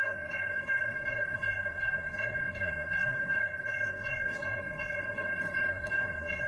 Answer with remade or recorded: remade